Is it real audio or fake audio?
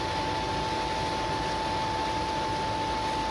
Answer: real